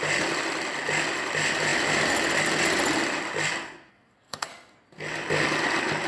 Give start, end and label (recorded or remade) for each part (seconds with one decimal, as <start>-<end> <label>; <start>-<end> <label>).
0.0-3.9 recorded; 3.9-4.5 remade; 4.5-6.1 recorded